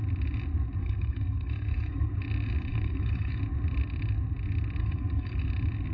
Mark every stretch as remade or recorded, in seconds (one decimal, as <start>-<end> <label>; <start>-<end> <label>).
0.0-0.8 recorded; 0.8-2.1 remade; 2.1-2.7 recorded; 2.7-3.4 remade; 3.4-4.8 recorded; 4.8-5.5 remade; 5.5-5.9 recorded